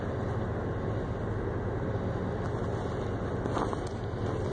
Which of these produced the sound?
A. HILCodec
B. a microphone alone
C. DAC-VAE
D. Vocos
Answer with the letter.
B